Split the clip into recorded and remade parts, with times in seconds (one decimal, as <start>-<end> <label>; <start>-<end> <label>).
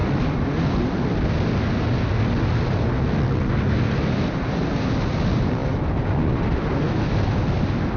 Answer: 0.0-8.0 recorded